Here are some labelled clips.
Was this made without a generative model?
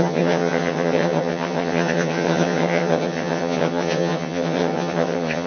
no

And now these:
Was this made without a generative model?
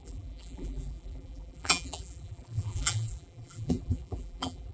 no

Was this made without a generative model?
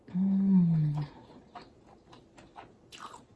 yes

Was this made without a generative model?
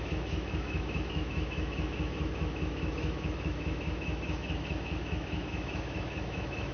no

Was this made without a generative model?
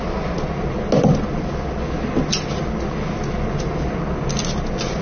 yes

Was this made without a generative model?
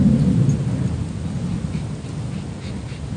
yes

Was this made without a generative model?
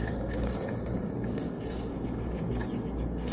no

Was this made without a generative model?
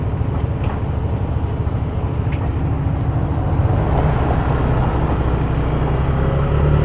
yes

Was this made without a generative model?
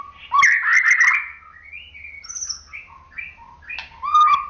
yes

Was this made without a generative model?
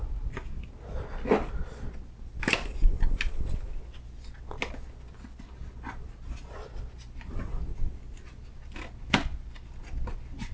yes